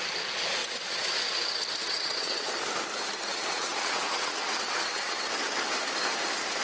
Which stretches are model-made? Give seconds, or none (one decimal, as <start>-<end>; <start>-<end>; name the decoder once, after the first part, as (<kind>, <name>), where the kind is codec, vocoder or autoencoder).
0.6-1.1 (vocoder, WaveNeXt); 1.8-2.5; 3.3-5.2